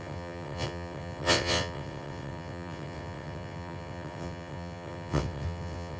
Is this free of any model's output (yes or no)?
no